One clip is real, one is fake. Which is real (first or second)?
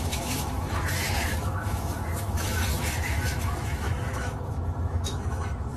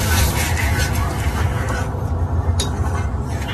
second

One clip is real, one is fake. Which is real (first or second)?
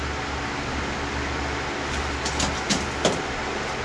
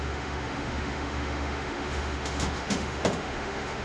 first